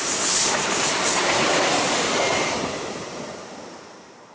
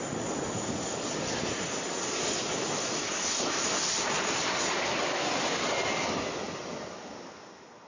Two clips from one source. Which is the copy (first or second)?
first